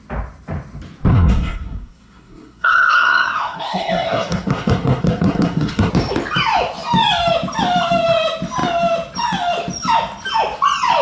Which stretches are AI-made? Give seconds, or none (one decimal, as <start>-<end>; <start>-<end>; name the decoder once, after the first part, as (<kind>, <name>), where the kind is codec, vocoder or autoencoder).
1.1-5.9 (codec, SNAC)